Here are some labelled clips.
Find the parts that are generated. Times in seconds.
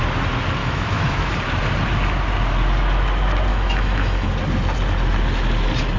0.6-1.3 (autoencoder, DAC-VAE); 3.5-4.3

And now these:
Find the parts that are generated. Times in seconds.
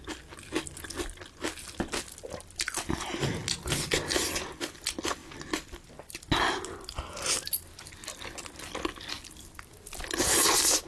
none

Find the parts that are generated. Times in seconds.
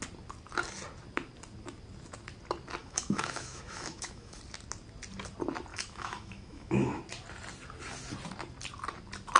2.8-4.4 (autoencoder, DAC-VAE); 5.7-7.0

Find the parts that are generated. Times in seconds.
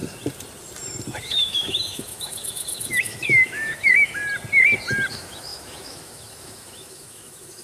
1.2-4.2 (autoencoder, DAC-VAE); 5.1-7.6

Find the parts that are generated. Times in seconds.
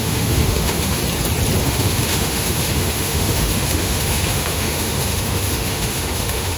0.0-1.0 (autoencoder, DAC-VAE); 1.6-6.6